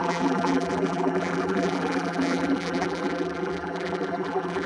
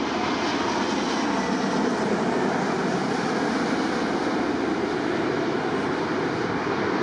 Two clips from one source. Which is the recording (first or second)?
second